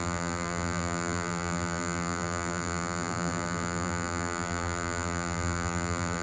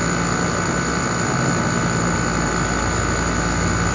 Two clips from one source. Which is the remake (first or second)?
first